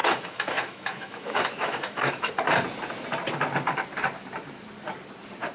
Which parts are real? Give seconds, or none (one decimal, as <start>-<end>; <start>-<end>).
2.3-5.5